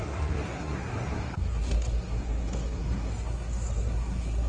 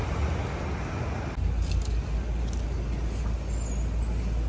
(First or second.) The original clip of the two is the second